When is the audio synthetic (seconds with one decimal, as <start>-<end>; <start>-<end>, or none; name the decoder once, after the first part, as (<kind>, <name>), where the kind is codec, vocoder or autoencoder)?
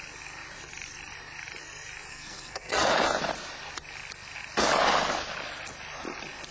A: 2.1-2.9 (codec, SNAC)